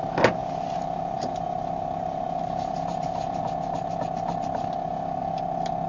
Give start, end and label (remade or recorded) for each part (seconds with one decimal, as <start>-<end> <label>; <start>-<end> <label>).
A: 0.0-0.4 recorded; 0.4-3.4 remade; 3.4-5.9 recorded